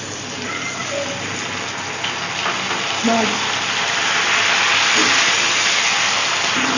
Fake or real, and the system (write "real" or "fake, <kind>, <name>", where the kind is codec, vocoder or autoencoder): real